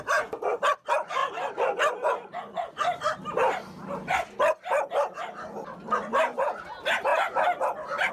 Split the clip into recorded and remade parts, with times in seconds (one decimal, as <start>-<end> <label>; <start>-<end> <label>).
0.0-8.1 recorded